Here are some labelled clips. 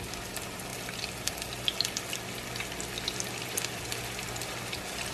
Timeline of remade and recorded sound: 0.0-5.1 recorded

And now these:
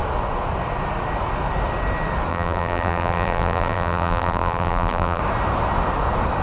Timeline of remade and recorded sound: 0.0-2.3 recorded; 2.3-5.2 remade; 5.2-6.4 recorded

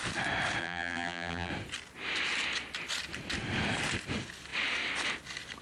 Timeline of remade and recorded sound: 0.0-0.6 recorded; 0.6-1.5 remade; 1.5-5.6 recorded

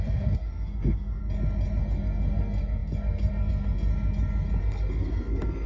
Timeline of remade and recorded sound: 0.0-1.2 remade; 1.2-1.8 recorded; 1.8-3.9 remade; 3.9-4.6 recorded; 4.6-5.7 remade

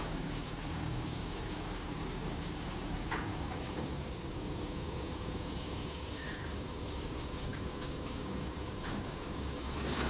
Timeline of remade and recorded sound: 0.0-10.1 remade